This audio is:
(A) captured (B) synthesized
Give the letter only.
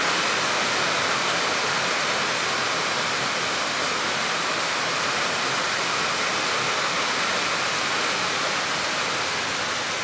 A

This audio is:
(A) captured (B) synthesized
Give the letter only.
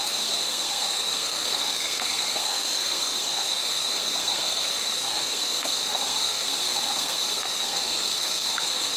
B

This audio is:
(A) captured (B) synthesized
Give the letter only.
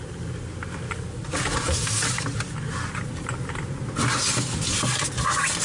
A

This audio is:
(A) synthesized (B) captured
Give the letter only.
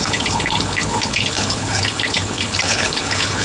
A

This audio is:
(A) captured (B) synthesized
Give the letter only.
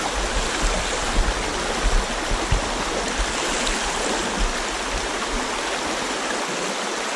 A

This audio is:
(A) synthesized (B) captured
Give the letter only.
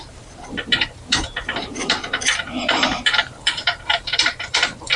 A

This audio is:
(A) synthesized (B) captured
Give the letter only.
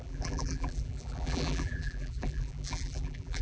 A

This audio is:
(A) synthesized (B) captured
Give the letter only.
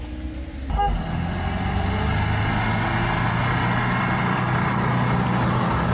B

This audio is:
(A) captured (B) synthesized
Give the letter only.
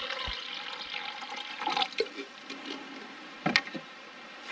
A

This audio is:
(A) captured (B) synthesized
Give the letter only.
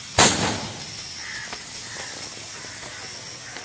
A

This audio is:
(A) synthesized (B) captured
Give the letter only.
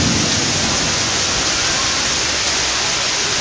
A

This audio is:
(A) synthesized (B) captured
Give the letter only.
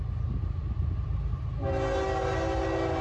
B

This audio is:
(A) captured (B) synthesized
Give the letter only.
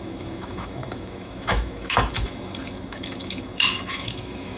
B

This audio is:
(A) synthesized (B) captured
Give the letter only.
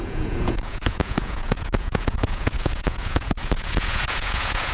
A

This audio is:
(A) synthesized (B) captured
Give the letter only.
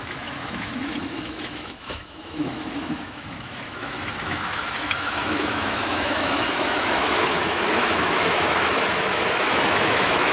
A